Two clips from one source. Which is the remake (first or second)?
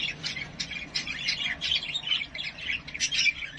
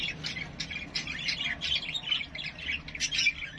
first